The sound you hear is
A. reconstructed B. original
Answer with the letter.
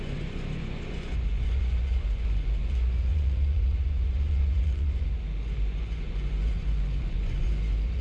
A